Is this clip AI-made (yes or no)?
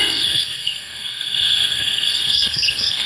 yes